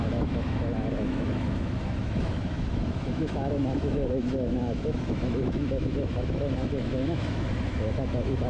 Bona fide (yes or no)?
no